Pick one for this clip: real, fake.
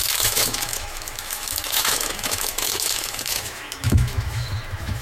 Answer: fake